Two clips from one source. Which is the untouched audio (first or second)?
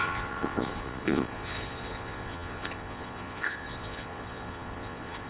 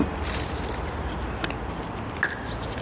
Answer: second